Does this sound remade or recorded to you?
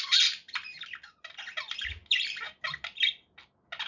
recorded